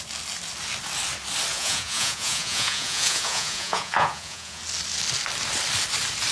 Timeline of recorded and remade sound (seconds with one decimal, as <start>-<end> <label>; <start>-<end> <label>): 0.0-1.5 recorded; 1.5-4.6 remade; 4.6-6.3 recorded